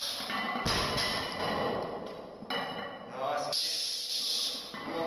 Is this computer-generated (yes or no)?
no